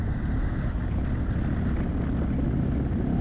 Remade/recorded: recorded